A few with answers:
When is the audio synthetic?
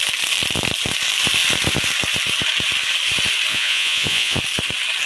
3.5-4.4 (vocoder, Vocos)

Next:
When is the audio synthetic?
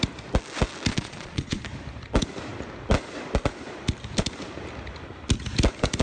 0.9-1.6 (vocoder, Vocos)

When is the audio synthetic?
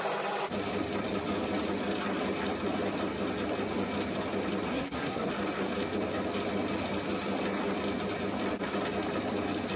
4.7-5.3 (codec, SNAC)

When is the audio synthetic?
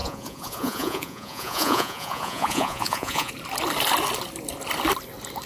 0.0-3.3 (vocoder, Vocos)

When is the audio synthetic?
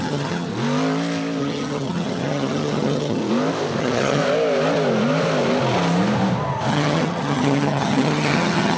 0.0-0.5 (vocoder, HiFi-GAN); 1.4-3.2; 3.8-4.2; 6.7-8.8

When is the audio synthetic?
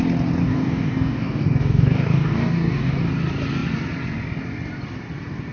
0.4-3.1 (codec, DAC)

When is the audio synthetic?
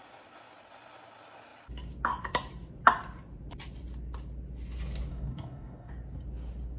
5.1-5.9 (codec, DAC)